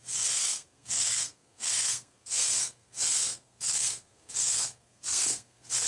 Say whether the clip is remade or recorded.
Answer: remade